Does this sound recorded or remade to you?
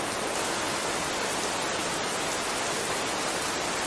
recorded